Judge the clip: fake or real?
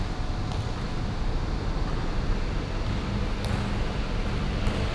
real